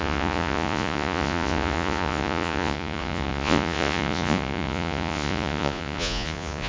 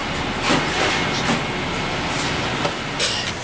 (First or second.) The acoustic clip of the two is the second